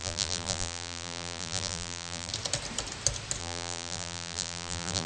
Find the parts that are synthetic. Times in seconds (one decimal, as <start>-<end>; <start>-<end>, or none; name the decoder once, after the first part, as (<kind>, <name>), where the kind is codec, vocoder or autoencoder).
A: 0.0-2.3 (vocoder, BigVGAN v2); 3.4-5.1